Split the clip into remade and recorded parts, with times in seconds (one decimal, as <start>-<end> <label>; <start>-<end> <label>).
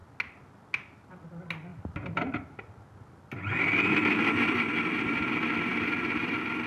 0.0-6.7 recorded